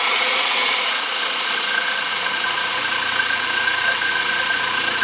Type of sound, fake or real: fake